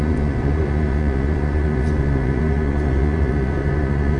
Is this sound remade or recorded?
remade